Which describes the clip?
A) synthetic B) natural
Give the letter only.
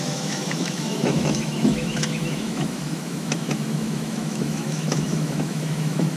A